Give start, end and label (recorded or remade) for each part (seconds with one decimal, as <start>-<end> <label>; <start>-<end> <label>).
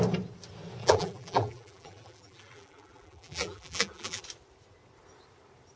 0.0-0.8 recorded; 0.8-4.2 remade; 4.2-5.8 recorded